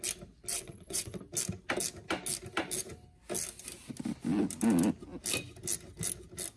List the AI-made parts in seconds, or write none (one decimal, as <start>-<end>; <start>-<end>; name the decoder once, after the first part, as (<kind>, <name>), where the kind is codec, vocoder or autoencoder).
0.5-1.2 (vocoder, WaveNeXt)